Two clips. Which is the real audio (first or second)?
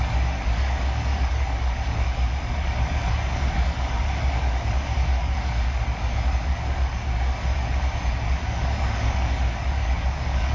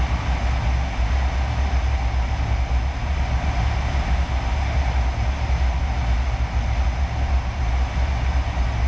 second